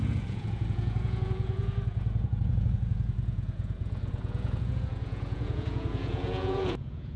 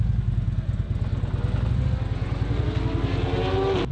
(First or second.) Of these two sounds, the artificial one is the first